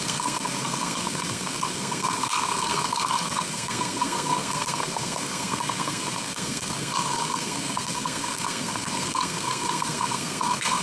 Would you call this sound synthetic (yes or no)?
yes